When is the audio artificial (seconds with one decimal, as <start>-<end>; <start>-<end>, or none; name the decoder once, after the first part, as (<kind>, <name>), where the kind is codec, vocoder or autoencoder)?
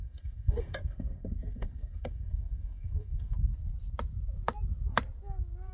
0.0-3.5 (codec, SNAC)